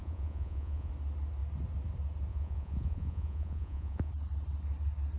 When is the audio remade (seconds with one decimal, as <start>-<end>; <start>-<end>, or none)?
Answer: 0.0-0.9; 2.3-4.1